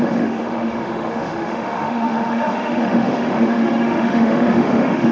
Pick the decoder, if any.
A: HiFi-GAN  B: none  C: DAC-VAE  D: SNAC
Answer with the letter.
C